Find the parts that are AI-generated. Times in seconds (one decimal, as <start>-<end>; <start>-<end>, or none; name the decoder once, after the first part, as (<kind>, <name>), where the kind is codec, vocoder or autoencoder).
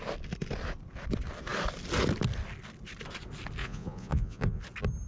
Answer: 3.6-4.6 (vocoder, Vocos)